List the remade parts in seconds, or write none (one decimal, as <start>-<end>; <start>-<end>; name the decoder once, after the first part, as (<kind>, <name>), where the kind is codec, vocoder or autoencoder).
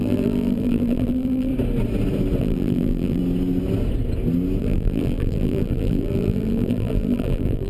0.0-1.5 (vocoder, BigVGAN v2); 2.4-3.2; 4.6-7.7